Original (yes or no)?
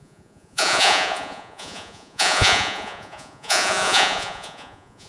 no